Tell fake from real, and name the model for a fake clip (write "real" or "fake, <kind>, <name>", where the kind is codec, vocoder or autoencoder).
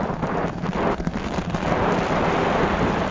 real